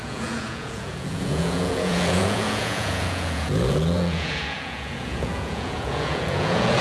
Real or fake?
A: fake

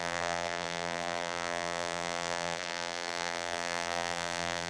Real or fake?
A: fake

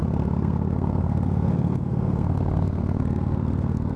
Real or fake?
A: fake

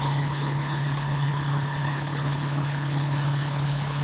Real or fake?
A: fake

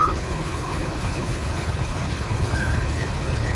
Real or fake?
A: fake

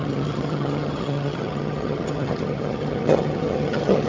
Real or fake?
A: fake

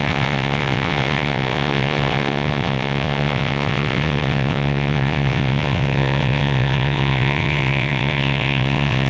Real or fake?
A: fake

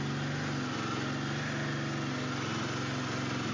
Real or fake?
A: real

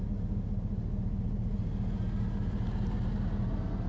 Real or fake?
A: real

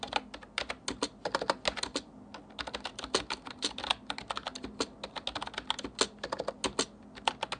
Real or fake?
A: real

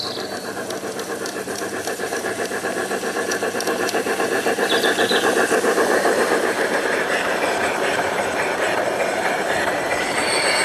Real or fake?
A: fake